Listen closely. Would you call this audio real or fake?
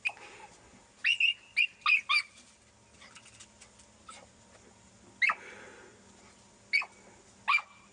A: real